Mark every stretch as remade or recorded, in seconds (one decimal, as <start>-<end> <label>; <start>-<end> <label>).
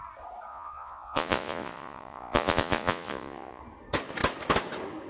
0.0-0.5 recorded; 0.5-3.6 remade; 3.6-5.1 recorded